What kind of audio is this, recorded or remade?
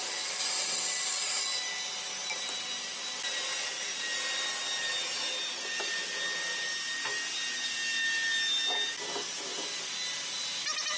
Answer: recorded